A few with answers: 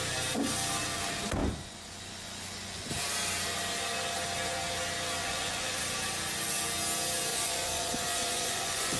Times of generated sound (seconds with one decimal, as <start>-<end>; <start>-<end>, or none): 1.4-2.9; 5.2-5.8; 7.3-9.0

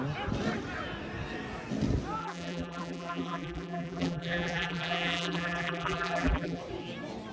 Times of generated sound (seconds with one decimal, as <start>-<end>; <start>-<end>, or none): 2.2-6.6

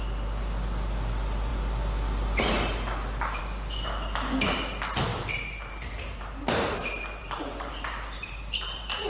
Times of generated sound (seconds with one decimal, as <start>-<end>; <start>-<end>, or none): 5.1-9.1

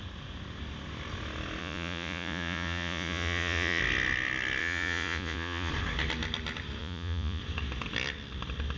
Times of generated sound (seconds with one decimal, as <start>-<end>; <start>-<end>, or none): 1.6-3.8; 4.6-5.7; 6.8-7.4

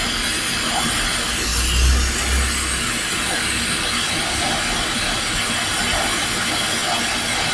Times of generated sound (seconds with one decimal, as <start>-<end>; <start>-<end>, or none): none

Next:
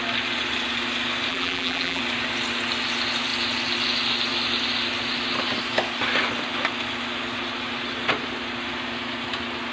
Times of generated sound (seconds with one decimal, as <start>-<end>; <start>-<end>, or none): 1.3-2.0

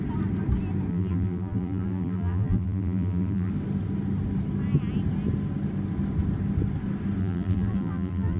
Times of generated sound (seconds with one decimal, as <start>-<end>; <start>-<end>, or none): 0.9-3.5; 7.2-8.4

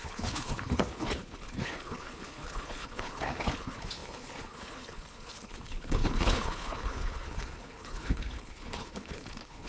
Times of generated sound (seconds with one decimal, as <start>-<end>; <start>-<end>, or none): 0.0-9.7